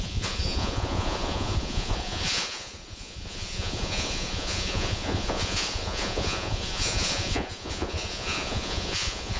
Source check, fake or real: fake